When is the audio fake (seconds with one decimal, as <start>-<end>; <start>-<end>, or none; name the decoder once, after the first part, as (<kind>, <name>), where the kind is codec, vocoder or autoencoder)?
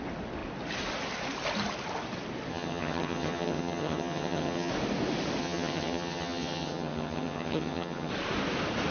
2.5-4.7 (vocoder, HiFi-GAN); 5.4-8.1